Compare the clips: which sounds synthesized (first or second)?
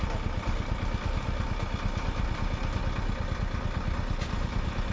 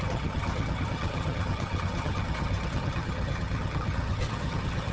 second